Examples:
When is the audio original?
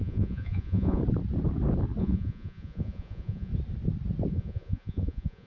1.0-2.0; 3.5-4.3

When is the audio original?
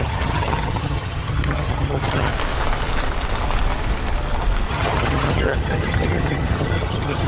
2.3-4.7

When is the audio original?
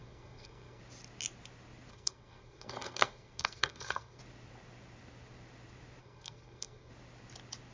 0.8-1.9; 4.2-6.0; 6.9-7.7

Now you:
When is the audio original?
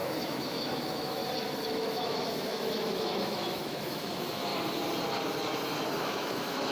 1.2-1.7; 4.5-6.0